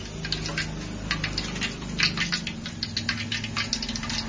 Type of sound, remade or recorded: recorded